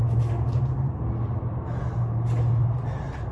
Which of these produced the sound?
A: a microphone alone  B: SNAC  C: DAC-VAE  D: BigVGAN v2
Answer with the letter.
A